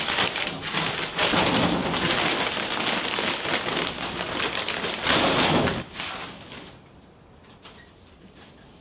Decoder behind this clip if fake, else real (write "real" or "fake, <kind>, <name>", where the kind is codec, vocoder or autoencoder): real